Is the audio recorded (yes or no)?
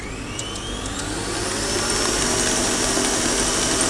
yes